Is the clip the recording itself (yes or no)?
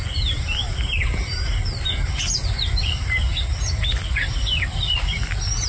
yes